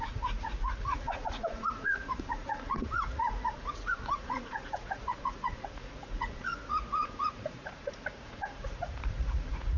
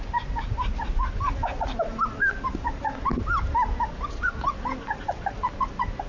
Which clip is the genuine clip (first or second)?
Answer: second